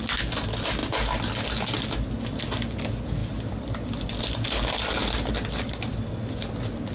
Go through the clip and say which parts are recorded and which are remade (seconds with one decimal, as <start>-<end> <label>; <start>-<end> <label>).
0.0-6.9 recorded